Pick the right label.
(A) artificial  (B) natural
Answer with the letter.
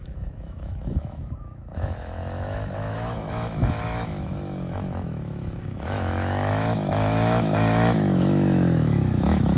A